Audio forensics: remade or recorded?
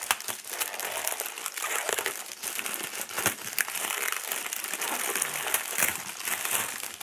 recorded